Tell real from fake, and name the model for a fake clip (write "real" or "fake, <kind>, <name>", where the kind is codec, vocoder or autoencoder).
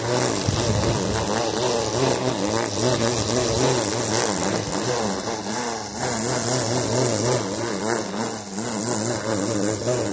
real